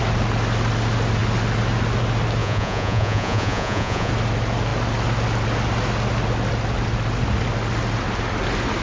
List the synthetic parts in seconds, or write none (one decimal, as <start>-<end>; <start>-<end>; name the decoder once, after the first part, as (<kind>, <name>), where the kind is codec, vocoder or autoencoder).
2.4-4.1 (vocoder, Vocos)